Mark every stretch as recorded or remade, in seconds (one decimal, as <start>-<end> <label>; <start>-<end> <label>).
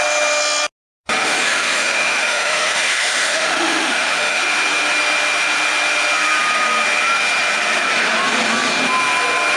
0.0-1.2 recorded; 1.2-4.4 remade; 4.4-9.6 recorded